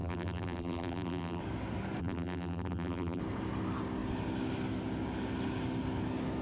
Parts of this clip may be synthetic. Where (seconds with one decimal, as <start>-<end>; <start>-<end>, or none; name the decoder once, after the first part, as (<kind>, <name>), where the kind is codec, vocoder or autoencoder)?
0.0-1.4 (vocoder, BigVGAN v2); 2.0-3.2